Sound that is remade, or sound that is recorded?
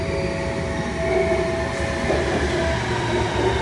recorded